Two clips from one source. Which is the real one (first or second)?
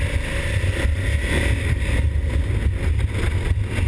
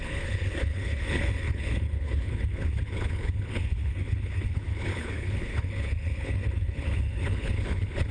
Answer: first